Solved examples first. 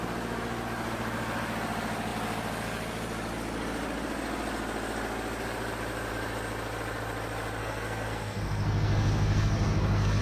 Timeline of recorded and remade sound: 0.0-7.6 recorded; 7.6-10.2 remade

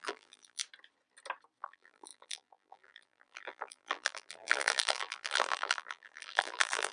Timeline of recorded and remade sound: 0.0-0.6 remade; 0.6-1.6 recorded; 1.6-6.9 remade